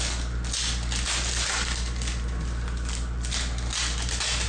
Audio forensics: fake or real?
real